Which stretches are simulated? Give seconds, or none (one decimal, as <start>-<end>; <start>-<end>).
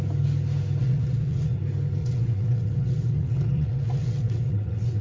0.8-1.6; 2.0-5.0